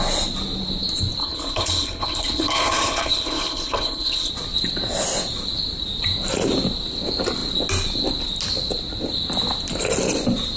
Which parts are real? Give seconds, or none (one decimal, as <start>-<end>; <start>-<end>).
0.0-1.2; 4.3-10.6